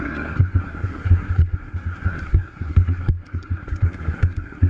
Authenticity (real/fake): fake